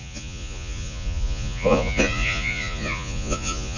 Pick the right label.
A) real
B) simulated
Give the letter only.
B